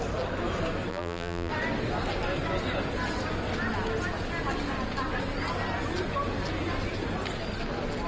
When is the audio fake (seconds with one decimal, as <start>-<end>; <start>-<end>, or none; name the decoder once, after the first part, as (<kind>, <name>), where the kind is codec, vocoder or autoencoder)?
0.9-1.5 (vocoder, BigVGAN v2)

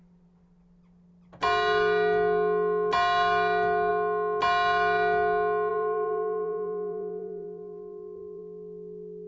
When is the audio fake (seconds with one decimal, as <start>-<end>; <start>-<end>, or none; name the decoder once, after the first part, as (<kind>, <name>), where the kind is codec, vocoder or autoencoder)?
5.7-8.4 (vocoder, BigVGAN v2)

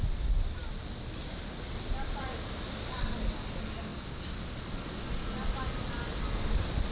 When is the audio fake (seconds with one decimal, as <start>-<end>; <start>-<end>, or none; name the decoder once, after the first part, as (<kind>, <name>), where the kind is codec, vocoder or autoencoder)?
none

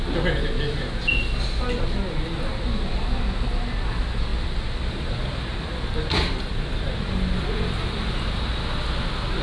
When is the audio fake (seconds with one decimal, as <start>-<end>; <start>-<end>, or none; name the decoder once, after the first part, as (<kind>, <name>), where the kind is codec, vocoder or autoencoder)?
4.3-8.1 (vocoder, BigVGAN v2)

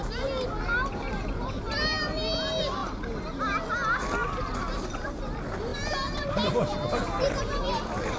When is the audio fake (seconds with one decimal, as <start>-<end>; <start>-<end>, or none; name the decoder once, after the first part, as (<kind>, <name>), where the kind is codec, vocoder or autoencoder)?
5.7-6.5 (vocoder, BigVGAN v2)

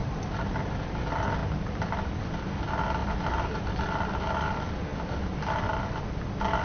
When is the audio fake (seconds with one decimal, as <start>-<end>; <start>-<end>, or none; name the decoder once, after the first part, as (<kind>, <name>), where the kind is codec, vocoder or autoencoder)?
0.0-0.9 (vocoder, BigVGAN v2); 1.4-2.2; 3.0-4.0

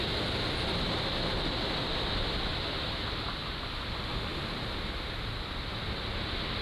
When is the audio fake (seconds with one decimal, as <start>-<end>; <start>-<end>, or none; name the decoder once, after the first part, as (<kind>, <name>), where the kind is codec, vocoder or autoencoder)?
none

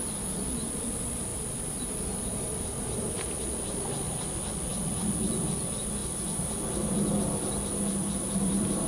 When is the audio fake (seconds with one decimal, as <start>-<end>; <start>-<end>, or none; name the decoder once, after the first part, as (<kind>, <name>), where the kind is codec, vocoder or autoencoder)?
1.3-3.4 (vocoder, BigVGAN v2); 6.0-6.5; 8.0-8.9